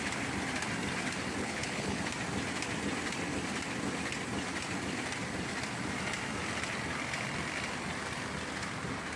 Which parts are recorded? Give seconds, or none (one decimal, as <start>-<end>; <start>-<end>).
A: 0.0-1.3; 2.0-9.2